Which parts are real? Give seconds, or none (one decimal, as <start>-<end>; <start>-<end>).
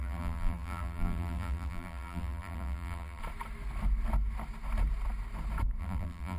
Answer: 3.2-5.8